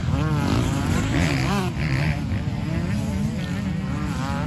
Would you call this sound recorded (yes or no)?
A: yes